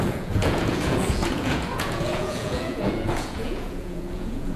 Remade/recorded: remade